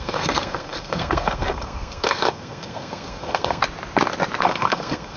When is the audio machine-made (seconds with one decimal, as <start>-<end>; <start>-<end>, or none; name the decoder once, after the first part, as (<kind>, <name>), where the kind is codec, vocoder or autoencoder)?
0.0-3.6 (codec, SNAC); 4.4-5.2